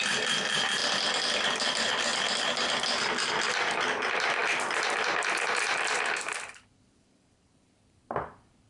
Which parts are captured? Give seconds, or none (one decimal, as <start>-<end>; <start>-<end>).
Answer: 0.8-1.7; 2.1-3.5